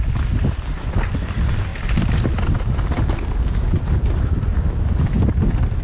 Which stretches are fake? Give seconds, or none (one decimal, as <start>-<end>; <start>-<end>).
none